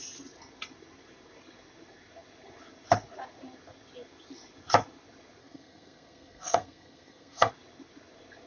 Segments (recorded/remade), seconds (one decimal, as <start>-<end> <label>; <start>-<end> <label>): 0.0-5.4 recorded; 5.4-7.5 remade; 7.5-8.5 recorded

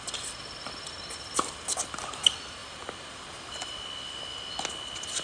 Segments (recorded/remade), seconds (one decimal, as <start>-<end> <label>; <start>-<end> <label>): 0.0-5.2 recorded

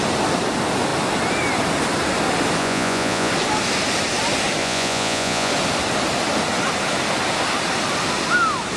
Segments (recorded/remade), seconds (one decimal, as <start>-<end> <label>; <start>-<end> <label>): 0.0-2.6 recorded; 2.6-3.3 remade; 3.3-4.6 recorded; 4.6-5.5 remade; 5.5-8.8 recorded

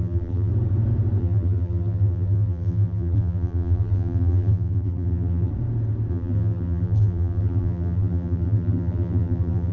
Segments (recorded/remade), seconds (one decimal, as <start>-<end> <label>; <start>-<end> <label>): 0.0-0.5 remade; 0.5-1.2 recorded; 1.2-5.5 remade; 5.5-6.1 recorded; 6.1-9.7 remade

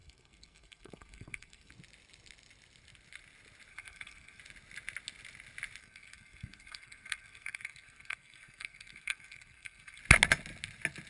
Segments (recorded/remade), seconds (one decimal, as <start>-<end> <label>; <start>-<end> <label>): 0.0-1.7 remade; 1.7-3.7 recorded; 3.7-4.4 remade; 4.4-5.8 recorded; 5.8-10.0 remade; 10.0-11.1 recorded

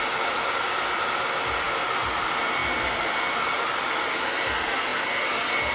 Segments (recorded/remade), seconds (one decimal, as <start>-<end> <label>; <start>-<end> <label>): 0.0-5.7 recorded

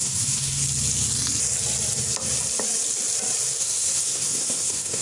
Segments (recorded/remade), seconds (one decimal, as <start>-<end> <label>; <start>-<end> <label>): 0.0-0.6 remade; 0.6-3.6 recorded; 3.6-5.0 remade